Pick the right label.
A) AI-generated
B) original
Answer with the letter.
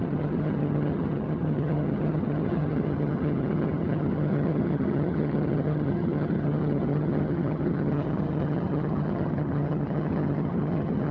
A